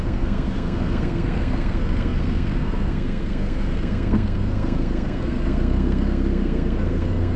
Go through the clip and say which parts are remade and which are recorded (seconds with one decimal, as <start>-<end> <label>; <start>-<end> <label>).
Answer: 0.0-7.4 remade